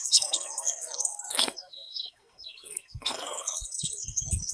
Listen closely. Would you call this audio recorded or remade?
remade